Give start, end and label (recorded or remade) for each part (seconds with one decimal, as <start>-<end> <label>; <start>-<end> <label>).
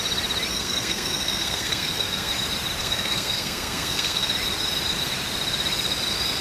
0.0-0.5 recorded; 0.5-2.3 remade; 2.3-2.8 recorded; 2.8-4.3 remade; 4.3-6.4 recorded